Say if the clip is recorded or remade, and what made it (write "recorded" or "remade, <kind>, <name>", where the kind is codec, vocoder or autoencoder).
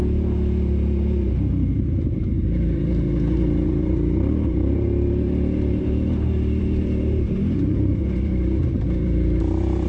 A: remade, vocoder, BigVGAN v2